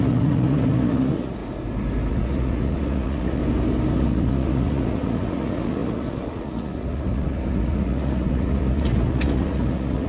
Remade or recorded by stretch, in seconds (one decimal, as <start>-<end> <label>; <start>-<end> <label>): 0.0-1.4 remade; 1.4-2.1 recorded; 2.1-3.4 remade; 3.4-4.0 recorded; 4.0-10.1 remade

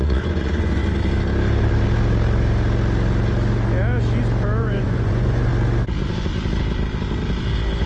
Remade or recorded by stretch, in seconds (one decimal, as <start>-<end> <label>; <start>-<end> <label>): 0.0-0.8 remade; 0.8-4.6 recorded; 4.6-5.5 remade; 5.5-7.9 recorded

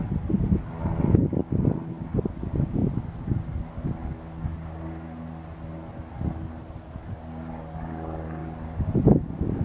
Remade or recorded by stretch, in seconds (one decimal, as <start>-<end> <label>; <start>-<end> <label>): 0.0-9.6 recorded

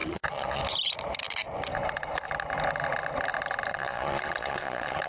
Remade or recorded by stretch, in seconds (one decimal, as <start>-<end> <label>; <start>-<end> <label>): 0.0-0.6 remade; 0.6-3.7 recorded; 3.7-5.1 remade

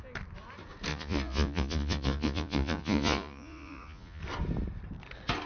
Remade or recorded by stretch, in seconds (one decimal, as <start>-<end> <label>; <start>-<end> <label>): 0.0-0.9 recorded; 0.9-4.2 remade; 4.2-5.5 recorded

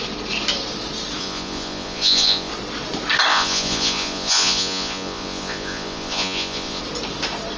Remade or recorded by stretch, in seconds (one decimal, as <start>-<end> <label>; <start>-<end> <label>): 0.0-1.2 recorded; 1.2-2.5 remade; 2.5-3.3 recorded; 3.3-6.8 remade; 6.8-7.6 recorded

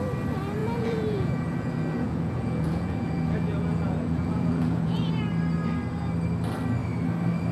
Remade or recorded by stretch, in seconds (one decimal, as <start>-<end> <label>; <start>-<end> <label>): 0.0-0.6 recorded; 0.6-5.1 remade; 5.1-7.5 recorded

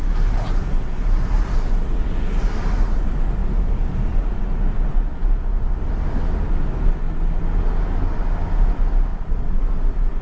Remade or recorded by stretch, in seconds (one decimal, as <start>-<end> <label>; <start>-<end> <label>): 0.0-9.1 recorded; 9.1-9.6 remade; 9.6-10.2 recorded